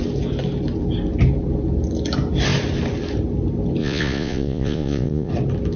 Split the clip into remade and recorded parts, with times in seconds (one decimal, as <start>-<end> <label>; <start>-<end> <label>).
0.0-3.8 recorded; 3.8-5.3 remade; 5.3-5.8 recorded

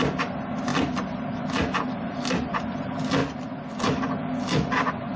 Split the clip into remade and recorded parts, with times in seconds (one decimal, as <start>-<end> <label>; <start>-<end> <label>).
0.0-5.2 recorded

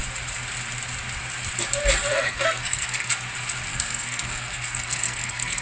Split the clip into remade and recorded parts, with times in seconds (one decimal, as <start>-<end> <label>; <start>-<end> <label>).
0.0-2.1 recorded; 2.1-3.1 remade; 3.1-3.7 recorded; 3.7-5.6 remade

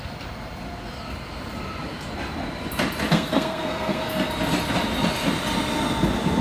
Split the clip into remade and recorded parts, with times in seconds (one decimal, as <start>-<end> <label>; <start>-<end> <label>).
0.0-3.1 recorded; 3.1-4.3 remade; 4.3-6.4 recorded

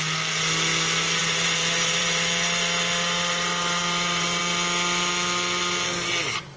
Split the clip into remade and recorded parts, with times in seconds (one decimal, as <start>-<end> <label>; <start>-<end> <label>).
0.0-1.2 recorded; 1.2-4.4 remade; 4.4-6.6 recorded

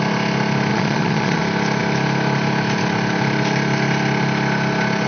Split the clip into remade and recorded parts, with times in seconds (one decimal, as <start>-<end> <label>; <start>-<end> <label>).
0.0-0.7 recorded; 0.7-1.4 remade; 1.4-5.1 recorded